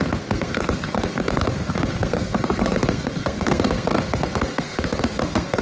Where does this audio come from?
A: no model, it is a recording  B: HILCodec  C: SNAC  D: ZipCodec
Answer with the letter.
C